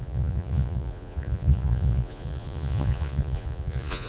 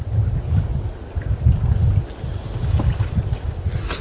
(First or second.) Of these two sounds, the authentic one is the second